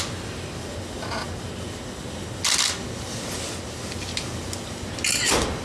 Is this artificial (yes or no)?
no